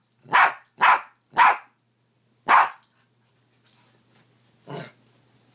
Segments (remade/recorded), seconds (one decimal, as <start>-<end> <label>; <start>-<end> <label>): 0.0-5.5 recorded

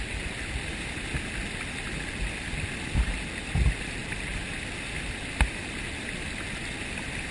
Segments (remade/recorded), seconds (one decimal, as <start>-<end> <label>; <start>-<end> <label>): 0.0-7.3 recorded

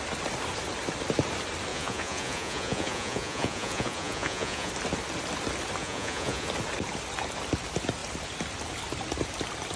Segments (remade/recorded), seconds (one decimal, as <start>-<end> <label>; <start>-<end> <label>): 0.0-1.7 recorded; 1.7-4.7 remade; 4.7-5.8 recorded; 5.8-6.5 remade; 6.5-9.8 recorded

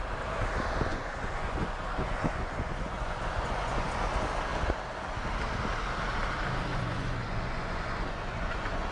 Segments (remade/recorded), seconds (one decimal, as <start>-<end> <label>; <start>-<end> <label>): 0.0-0.9 recorded; 0.9-4.0 remade; 4.0-6.7 recorded; 6.7-8.9 remade

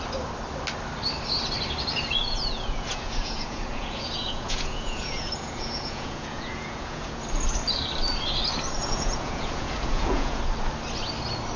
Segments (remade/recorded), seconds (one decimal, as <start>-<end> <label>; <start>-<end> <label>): 0.0-2.2 recorded; 2.2-7.2 remade; 7.2-8.8 recorded; 8.8-10.4 remade; 10.4-11.6 recorded

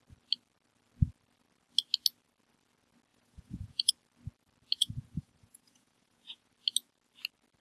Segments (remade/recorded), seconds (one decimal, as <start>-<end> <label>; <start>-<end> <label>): 0.0-3.1 recorded; 3.1-3.9 remade; 3.9-4.8 recorded; 4.8-6.5 remade; 6.5-7.6 recorded

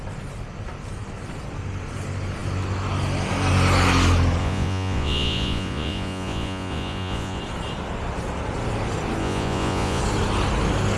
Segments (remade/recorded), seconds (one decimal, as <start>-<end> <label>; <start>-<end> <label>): 0.0-4.4 recorded; 4.4-7.4 remade; 7.4-9.2 recorded; 9.2-10.0 remade; 10.0-11.0 recorded

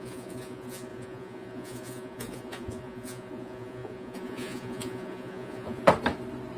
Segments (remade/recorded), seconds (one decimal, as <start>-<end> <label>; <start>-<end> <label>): 0.0-5.8 remade; 5.8-6.6 recorded